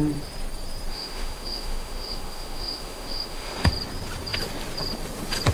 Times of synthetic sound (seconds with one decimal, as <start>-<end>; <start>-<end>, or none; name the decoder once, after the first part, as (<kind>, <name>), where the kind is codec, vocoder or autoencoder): 0.9-3.7 (autoencoder, DAC-VAE)